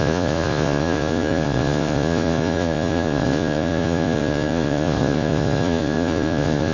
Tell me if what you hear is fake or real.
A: fake